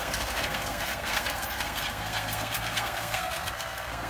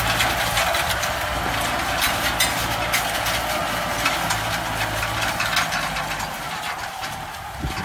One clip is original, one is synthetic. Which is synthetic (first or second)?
first